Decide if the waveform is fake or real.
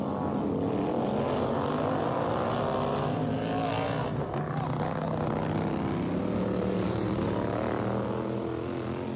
real